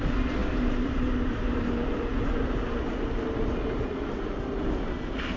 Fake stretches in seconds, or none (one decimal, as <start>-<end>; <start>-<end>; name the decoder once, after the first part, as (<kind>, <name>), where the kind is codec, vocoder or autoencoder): 0.4-1.7 (vocoder, BigVGAN v2)